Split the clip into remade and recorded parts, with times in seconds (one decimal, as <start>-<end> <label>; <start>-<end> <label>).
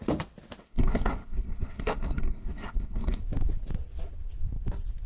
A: 0.0-0.6 recorded; 0.6-3.2 remade; 3.2-5.1 recorded